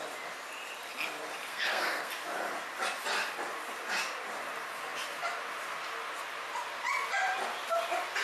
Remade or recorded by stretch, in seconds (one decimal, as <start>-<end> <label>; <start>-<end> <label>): 0.0-1.5 recorded; 1.5-2.1 remade; 2.1-8.2 recorded

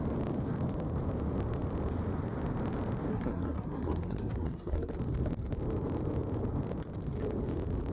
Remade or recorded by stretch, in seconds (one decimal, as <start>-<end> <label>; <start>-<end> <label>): 0.0-3.1 recorded; 3.1-4.9 remade; 4.9-7.9 recorded

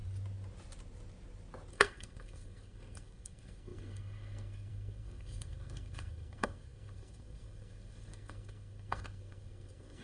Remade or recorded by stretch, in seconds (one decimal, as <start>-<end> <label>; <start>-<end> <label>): 0.0-1.7 recorded; 1.7-10.0 remade

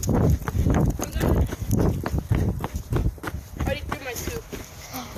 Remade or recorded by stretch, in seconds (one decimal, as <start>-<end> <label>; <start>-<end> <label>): 0.0-5.2 recorded

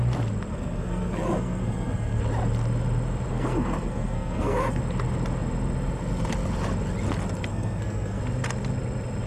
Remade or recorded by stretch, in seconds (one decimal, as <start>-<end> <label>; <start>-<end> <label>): 0.0-0.5 recorded; 0.5-2.2 remade; 2.2-3.3 recorded; 3.3-4.8 remade; 4.8-7.5 recorded; 7.5-8.2 remade; 8.2-9.3 recorded

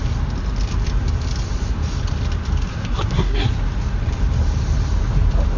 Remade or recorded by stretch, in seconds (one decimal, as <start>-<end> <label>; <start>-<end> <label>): 0.0-2.7 recorded; 2.7-3.5 remade; 3.5-5.6 recorded

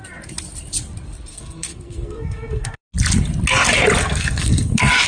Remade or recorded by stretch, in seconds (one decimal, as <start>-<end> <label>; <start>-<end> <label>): 0.0-1.3 recorded; 1.3-2.8 remade; 2.8-4.0 recorded; 4.0-5.1 remade